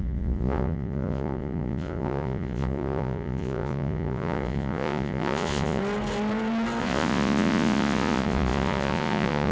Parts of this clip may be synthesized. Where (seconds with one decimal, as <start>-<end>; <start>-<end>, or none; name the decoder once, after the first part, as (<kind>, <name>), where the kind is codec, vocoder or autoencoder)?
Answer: 0.0-5.8 (vocoder, Vocos); 6.8-9.5